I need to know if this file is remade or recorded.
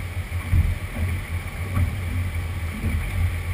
recorded